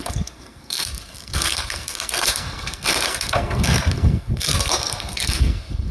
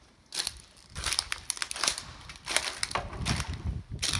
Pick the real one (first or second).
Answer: second